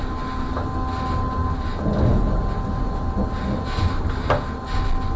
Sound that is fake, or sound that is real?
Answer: real